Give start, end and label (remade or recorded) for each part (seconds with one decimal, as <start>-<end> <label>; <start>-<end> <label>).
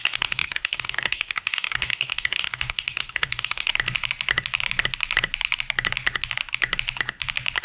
0.0-3.7 remade; 3.7-7.6 recorded